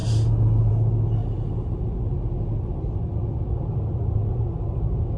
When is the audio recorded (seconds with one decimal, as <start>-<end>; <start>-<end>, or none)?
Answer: 0.0-5.2